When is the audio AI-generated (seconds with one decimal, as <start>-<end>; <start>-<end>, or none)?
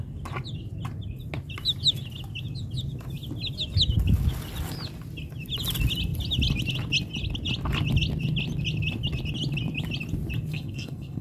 10.5-11.2